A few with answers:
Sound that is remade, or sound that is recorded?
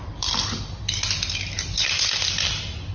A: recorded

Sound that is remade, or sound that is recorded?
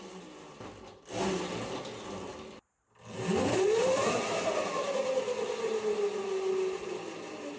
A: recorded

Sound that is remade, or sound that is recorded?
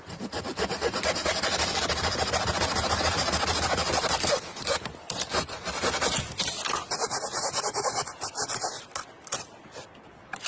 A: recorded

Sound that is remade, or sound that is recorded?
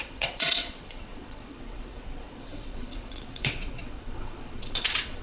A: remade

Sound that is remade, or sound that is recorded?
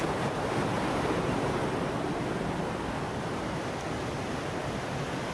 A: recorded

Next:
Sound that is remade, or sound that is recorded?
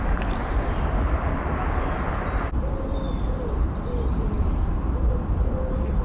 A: recorded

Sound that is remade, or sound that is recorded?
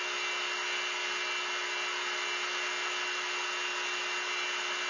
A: recorded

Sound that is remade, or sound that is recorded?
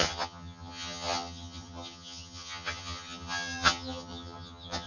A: remade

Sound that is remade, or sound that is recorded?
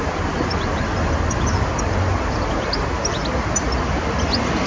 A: recorded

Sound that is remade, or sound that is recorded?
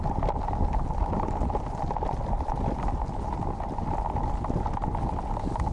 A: recorded